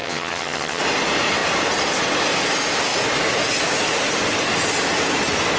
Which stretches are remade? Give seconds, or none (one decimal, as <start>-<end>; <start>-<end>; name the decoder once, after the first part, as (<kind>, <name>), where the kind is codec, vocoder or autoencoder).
0.0-0.8 (vocoder, HiFi-GAN)